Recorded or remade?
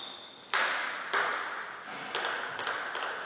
recorded